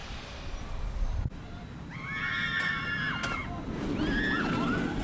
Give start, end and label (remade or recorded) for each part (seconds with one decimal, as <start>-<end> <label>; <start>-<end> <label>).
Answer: 0.0-5.0 recorded

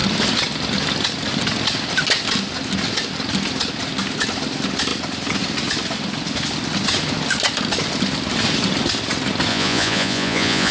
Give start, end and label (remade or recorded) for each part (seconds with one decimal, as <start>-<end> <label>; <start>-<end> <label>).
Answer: 0.0-9.5 recorded; 9.5-10.7 remade

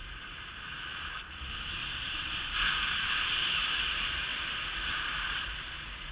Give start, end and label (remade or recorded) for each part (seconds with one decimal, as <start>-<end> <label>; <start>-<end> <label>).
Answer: 0.0-4.3 remade; 4.3-4.9 recorded; 4.9-6.1 remade

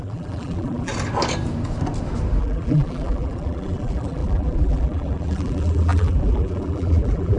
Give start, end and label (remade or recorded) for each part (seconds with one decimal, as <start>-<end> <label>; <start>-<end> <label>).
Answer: 0.0-0.9 remade; 0.9-2.4 recorded; 2.4-7.4 remade

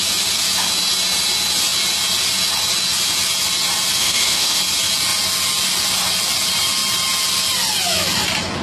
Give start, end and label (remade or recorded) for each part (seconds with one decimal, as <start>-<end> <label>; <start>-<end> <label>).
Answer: 0.0-4.0 recorded; 4.0-4.6 remade; 4.6-8.6 recorded